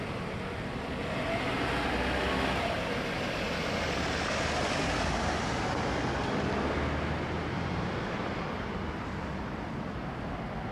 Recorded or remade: recorded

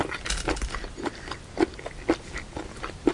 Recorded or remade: recorded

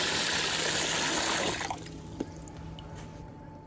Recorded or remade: recorded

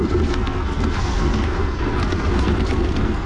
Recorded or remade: remade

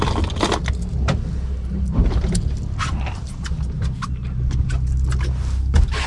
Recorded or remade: recorded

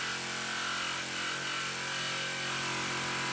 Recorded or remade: recorded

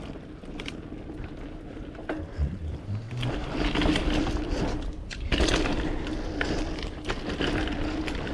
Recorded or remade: recorded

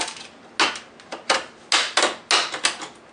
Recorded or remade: recorded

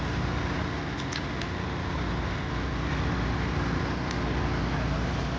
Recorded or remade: recorded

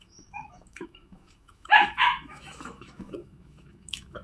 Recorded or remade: remade